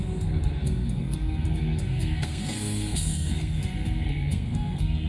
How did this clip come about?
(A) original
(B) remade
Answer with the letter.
B